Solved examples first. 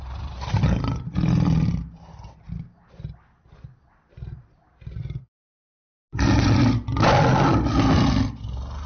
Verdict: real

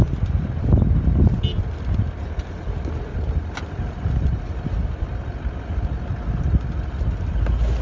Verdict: real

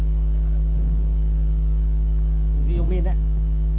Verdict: real